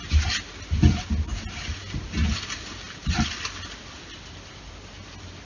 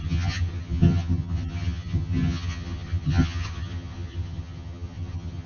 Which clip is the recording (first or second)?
first